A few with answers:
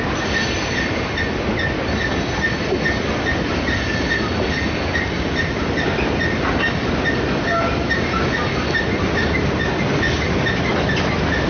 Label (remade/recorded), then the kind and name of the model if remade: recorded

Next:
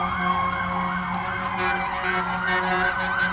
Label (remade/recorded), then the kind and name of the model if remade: recorded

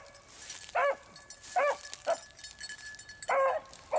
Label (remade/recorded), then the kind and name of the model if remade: recorded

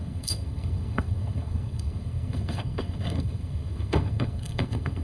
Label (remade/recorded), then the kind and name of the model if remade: remade, codec, SNAC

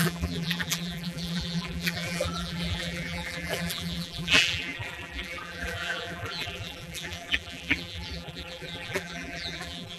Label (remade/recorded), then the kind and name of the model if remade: remade, vocoder, BigVGAN v2